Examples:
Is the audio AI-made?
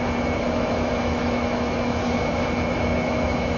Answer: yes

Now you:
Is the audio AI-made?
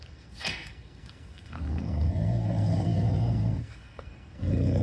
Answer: yes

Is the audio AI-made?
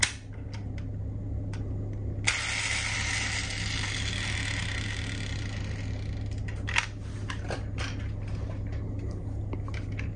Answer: no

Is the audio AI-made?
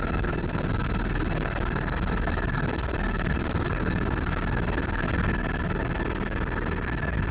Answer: yes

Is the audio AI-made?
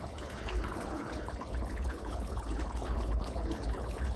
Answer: yes